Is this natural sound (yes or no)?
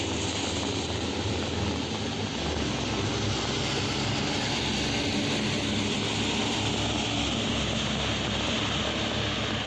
yes